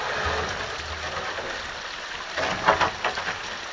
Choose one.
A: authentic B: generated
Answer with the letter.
A